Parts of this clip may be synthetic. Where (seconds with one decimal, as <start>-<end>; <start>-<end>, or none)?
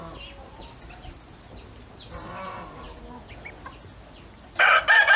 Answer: none